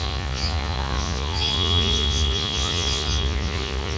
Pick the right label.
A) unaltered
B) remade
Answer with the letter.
B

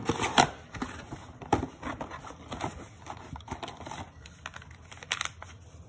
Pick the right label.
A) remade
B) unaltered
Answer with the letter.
B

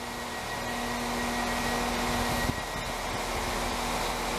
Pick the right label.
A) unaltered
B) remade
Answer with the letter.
A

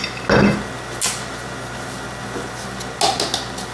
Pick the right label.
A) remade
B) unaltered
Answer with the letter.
B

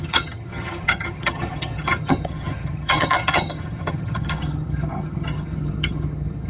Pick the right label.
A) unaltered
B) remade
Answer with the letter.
B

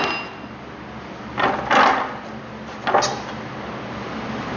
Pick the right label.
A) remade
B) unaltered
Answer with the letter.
B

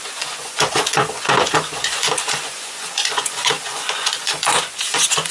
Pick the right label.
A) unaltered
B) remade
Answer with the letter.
B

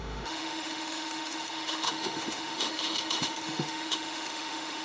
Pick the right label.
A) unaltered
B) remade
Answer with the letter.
B